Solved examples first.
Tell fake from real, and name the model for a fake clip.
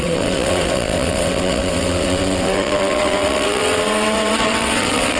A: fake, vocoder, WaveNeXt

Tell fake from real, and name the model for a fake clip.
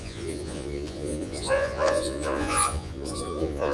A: fake, vocoder, Vocos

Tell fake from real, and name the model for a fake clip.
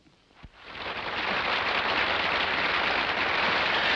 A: real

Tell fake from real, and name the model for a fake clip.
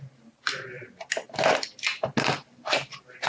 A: real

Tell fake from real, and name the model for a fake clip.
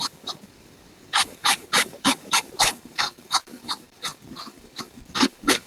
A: fake, codec, DAC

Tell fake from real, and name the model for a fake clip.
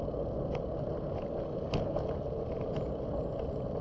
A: real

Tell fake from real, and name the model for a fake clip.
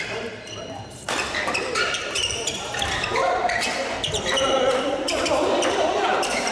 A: fake, vocoder, BigVGAN v2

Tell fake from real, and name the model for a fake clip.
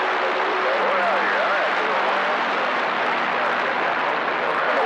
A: real